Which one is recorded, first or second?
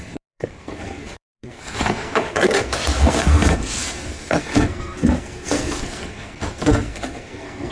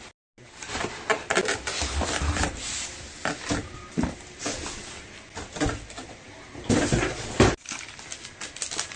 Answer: second